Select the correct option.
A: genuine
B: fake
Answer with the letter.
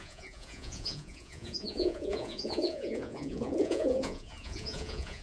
B